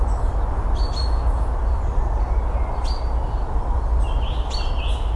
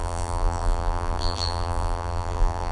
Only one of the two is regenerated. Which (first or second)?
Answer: second